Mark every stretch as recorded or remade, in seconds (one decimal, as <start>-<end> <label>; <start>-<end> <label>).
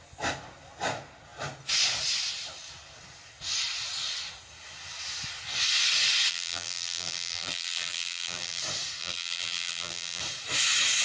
0.0-6.3 recorded; 6.3-8.6 remade; 8.6-9.0 recorded; 9.0-10.2 remade; 10.2-11.0 recorded